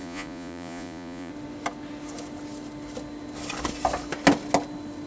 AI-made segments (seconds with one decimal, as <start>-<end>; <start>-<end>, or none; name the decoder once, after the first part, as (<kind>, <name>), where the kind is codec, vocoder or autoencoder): 0.0-1.3 (vocoder, Vocos)